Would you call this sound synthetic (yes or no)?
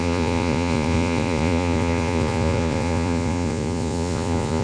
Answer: yes